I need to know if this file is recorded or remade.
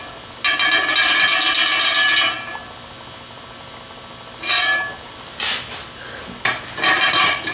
recorded